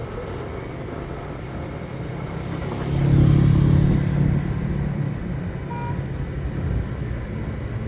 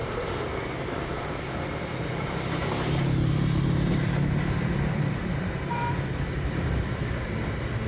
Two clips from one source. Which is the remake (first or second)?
second